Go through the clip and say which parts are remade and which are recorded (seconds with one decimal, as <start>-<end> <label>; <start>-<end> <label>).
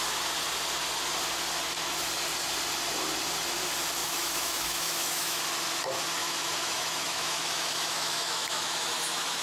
0.0-4.0 recorded; 4.0-5.4 remade; 5.4-6.2 recorded; 6.2-9.4 remade